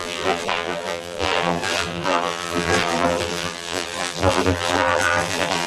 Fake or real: fake